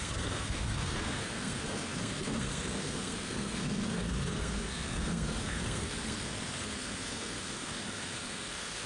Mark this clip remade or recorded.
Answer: remade